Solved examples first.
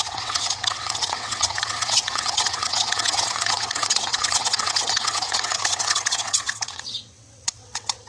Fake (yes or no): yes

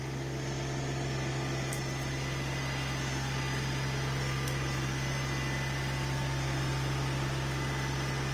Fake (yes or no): no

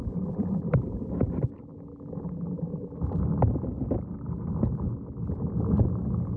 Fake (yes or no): no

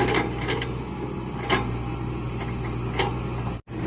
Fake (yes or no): no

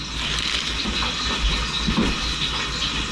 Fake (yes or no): no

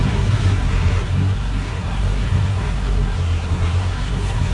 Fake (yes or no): yes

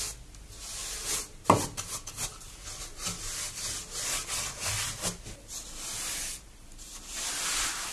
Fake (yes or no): no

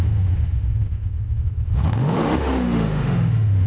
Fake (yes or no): yes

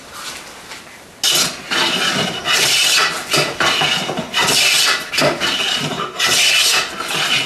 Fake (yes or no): no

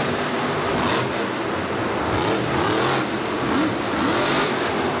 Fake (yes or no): no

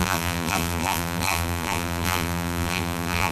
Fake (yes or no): yes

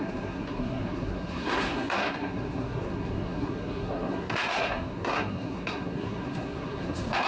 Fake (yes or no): yes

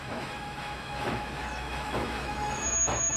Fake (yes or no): yes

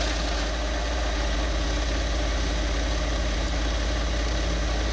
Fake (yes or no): no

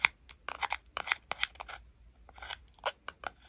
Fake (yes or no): no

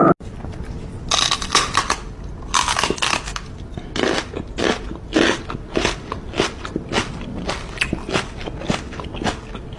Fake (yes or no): no